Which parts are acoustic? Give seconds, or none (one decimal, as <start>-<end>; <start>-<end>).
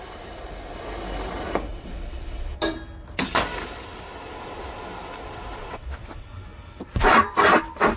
0.0-1.7; 2.6-5.6; 6.4-8.0